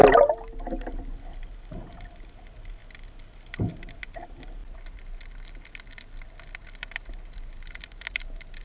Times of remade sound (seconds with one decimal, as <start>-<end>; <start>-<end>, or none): none